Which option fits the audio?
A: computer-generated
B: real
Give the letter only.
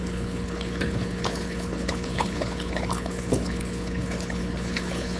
A